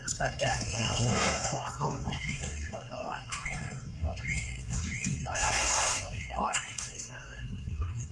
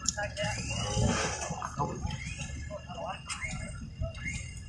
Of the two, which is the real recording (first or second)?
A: second